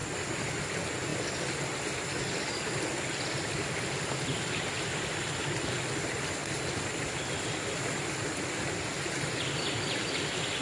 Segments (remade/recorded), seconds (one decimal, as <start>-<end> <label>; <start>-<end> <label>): 0.0-10.6 recorded